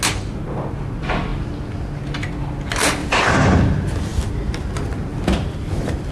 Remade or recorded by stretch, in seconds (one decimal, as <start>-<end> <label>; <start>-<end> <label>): 0.0-3.0 recorded; 3.0-3.6 remade; 3.6-5.1 recorded; 5.1-6.1 remade